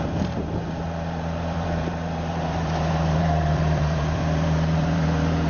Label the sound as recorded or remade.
remade